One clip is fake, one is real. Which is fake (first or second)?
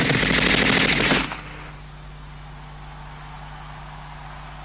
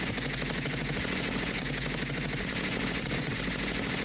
second